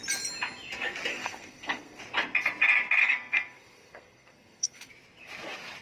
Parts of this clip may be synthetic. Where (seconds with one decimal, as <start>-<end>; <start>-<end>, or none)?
1.1-2.0; 3.0-4.9